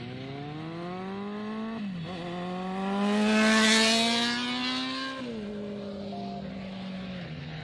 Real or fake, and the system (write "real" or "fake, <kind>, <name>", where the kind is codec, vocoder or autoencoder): real